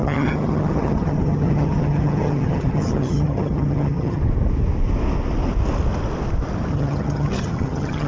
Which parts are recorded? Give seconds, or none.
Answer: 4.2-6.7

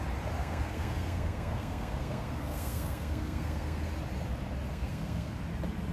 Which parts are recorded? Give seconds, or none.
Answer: 0.0-0.4; 3.9-4.7; 5.4-5.9

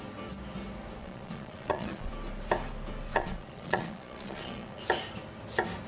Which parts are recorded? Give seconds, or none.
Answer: 0.0-1.0; 2.1-3.1; 4.8-5.9

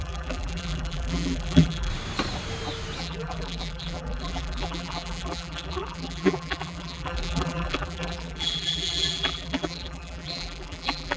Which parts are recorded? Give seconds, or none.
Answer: 1.9-3.0

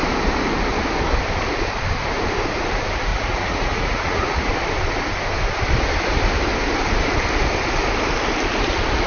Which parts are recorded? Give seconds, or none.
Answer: 0.0-3.1; 4.5-9.1

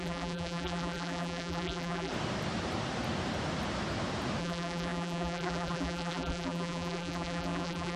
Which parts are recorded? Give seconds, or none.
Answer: 2.1-4.4

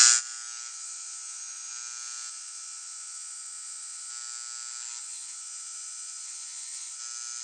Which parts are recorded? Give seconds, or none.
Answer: 0.0-0.7; 1.7-2.3; 4.1-5.0; 7.0-7.4

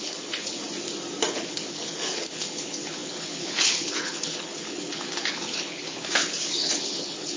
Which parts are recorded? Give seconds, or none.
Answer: 0.6-1.3